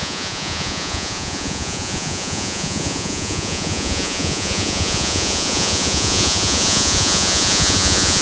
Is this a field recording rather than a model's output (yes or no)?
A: no